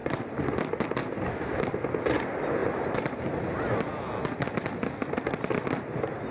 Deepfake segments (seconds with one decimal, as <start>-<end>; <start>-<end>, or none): 2.6-4.1